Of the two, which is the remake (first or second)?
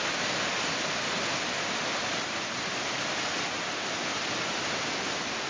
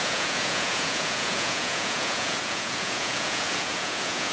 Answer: second